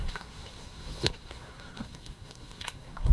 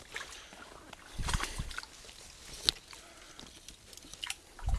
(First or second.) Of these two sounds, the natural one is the second